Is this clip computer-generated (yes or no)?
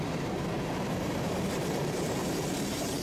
yes